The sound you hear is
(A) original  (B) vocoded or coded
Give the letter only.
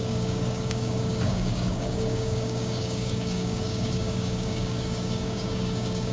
B